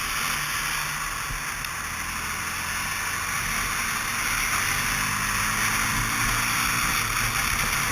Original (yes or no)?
yes